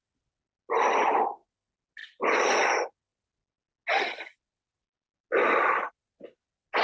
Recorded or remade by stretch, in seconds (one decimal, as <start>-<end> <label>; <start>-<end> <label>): 0.0-6.8 recorded